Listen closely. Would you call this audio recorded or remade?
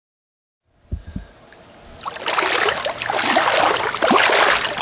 recorded